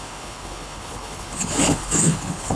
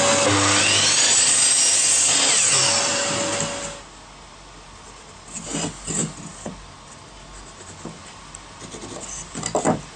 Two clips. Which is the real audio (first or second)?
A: second